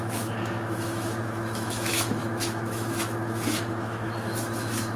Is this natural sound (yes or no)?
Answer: no